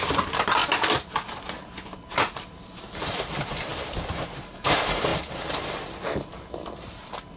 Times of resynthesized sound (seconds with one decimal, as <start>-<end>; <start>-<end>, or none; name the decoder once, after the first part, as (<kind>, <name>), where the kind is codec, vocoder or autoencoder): 0.0-0.6 (vocoder, BigVGAN v2); 2.1-5.1; 7.0-7.4